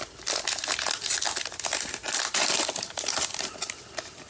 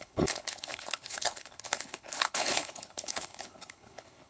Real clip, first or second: first